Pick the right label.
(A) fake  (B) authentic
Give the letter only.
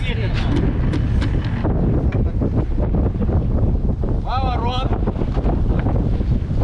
B